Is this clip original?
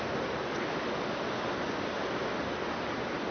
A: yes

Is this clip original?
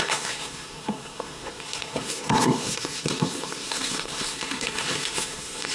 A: no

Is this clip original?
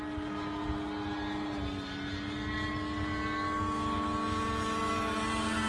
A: yes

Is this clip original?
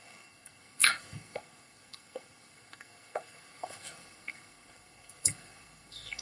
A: no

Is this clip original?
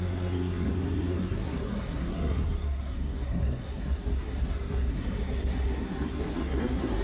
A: no